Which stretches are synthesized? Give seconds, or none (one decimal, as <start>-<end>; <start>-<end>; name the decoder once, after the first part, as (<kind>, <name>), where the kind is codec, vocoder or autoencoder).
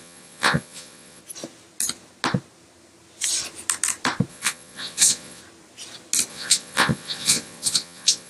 0.0-1.2 (vocoder, Vocos); 4.3-5.4; 6.3-8.3